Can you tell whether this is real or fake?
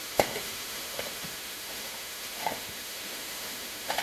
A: fake